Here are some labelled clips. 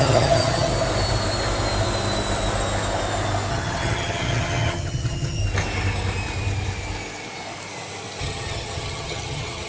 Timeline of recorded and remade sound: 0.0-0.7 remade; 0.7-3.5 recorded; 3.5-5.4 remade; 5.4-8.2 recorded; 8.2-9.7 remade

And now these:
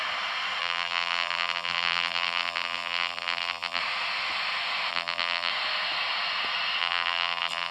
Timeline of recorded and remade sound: 0.0-0.6 recorded; 0.6-3.8 remade; 3.8-4.9 recorded; 4.9-5.5 remade; 5.5-6.8 recorded; 6.8-7.7 remade

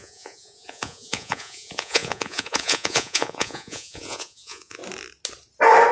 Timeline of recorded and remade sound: 0.0-4.8 remade; 4.8-5.9 recorded